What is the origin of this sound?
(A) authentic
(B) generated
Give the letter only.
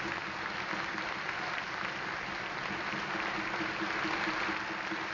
A